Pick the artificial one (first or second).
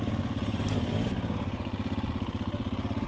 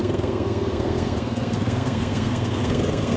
second